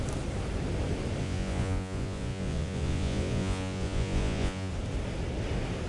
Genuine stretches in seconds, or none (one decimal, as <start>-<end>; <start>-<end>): 0.0-1.2; 4.7-5.9

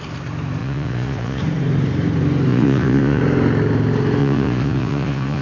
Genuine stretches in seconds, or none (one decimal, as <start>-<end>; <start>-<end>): 0.0-0.6; 1.4-2.5; 3.2-4.2

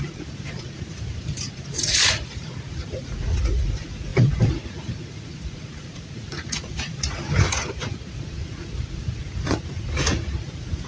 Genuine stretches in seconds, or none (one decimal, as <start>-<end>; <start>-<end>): none

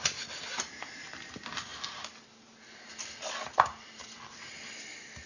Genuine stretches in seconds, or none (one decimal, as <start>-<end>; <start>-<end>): 0.0-5.3

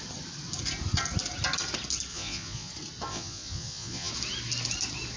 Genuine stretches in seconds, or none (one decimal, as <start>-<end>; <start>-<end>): 0.0-2.1; 2.7-3.1; 4.1-5.2